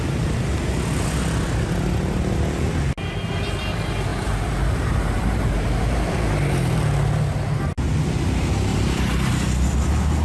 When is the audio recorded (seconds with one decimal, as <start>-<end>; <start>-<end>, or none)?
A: 0.0-4.1; 6.3-8.7; 9.3-10.2